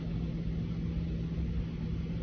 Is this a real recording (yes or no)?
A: yes